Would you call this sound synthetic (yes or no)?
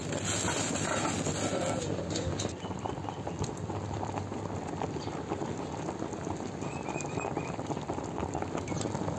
no